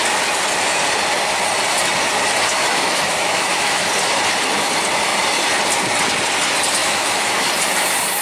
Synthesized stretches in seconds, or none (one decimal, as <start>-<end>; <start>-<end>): 2.6-3.9; 6.8-7.5